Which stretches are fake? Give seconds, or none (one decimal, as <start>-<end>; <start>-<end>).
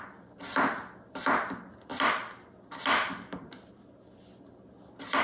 none